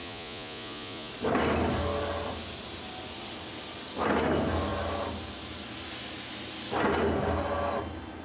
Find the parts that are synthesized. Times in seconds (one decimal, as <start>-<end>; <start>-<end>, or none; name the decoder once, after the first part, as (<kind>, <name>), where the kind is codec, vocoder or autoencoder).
0.0-1.1 (vocoder, Vocos)